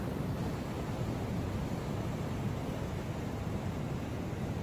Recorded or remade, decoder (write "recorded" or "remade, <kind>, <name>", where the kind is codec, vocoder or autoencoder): recorded